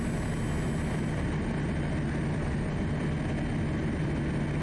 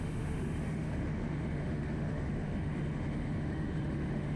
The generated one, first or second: second